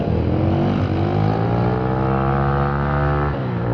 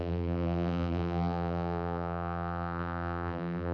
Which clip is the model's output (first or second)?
second